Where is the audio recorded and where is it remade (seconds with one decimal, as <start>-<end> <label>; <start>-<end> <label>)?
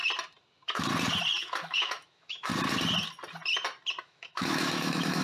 0.0-1.4 recorded; 1.4-2.5 remade; 2.5-4.0 recorded; 4.0-5.2 remade